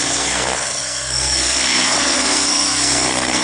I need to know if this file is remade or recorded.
remade